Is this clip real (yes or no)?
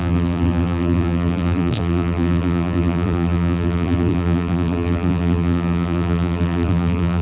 no